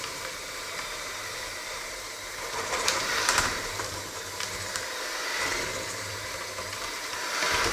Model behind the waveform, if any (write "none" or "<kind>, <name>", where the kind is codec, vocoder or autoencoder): vocoder, BigVGAN v2